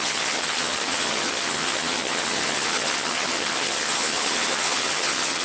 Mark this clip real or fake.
fake